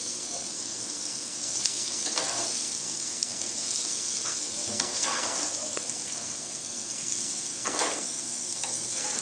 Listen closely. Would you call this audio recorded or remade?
remade